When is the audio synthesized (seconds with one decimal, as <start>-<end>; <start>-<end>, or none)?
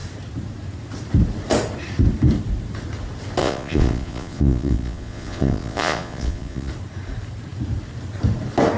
3.4-6.7